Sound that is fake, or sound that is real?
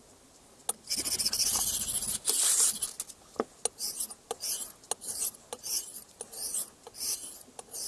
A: real